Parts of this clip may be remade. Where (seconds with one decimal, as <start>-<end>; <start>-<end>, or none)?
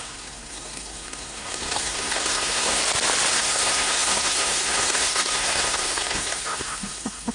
0.0-2.8; 3.3-7.3